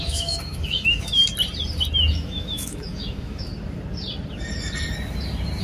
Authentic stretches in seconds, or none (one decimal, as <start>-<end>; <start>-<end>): 1.2-2.1; 3.5-5.6